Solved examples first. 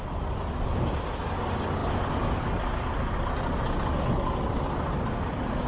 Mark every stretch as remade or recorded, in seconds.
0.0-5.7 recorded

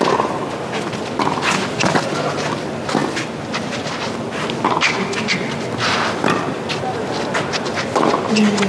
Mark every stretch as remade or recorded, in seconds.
0.0-8.7 recorded

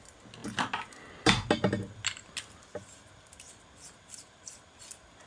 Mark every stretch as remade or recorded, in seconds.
0.0-5.3 recorded